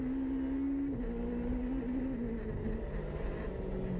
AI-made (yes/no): no